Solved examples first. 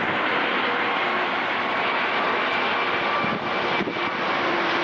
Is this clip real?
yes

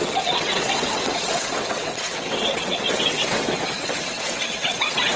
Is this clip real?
no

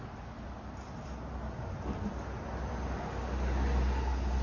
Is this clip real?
yes